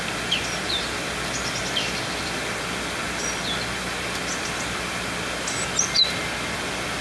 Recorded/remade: recorded